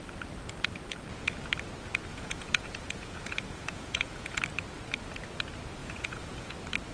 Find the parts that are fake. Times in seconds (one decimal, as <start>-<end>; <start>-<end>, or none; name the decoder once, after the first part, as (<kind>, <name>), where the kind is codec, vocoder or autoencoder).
2.1-4.4 (vocoder, Vocos); 5.8-6.5